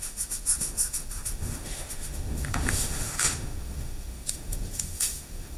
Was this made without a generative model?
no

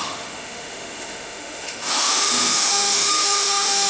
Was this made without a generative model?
no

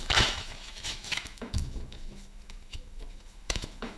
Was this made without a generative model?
no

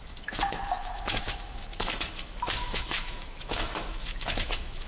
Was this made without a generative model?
no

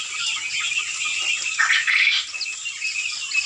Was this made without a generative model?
yes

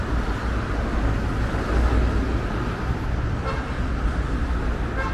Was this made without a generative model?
yes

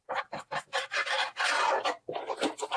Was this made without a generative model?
yes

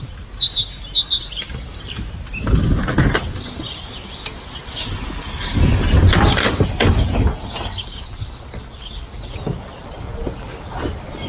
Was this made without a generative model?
yes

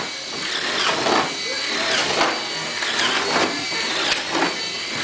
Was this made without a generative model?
yes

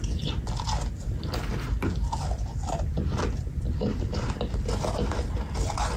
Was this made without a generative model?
yes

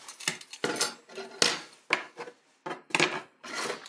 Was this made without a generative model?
yes